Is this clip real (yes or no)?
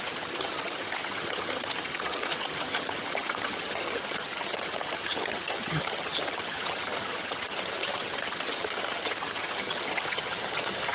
no